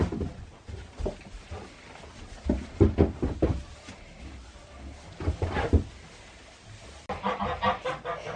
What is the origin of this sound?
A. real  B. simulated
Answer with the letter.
A